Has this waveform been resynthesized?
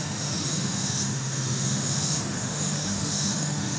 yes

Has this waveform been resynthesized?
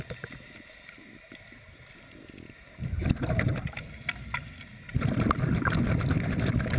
no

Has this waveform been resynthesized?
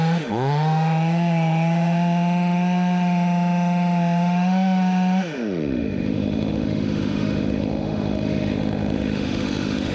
yes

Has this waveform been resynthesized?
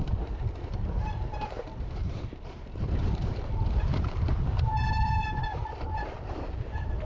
yes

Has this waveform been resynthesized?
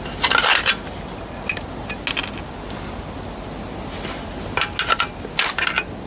no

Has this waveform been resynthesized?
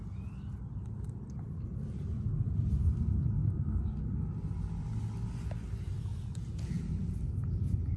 no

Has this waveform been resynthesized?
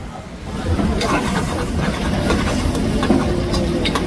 no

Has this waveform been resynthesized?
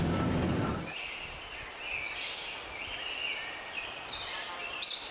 no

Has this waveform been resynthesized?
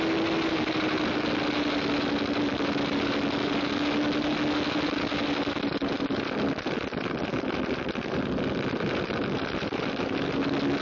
no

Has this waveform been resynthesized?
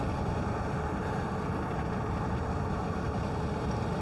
no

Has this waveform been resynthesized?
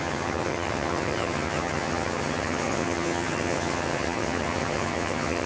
yes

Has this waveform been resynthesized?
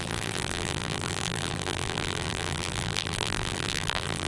yes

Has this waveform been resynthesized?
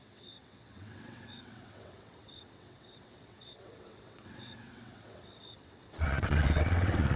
yes